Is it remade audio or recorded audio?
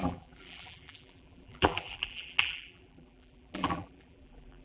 remade